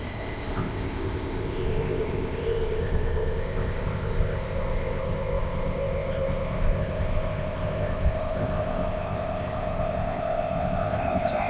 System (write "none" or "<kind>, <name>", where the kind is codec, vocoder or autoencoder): codec, ZipCodec